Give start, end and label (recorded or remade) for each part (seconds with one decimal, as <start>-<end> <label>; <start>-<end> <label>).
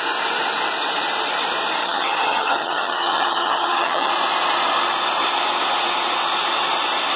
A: 0.0-1.8 recorded; 1.8-4.1 remade; 4.1-7.2 recorded